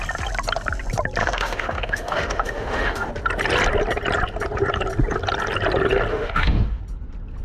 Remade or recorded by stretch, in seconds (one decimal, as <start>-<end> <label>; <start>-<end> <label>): 0.0-1.2 recorded; 1.2-3.1 remade; 3.1-6.1 recorded; 6.1-6.8 remade; 6.8-7.4 recorded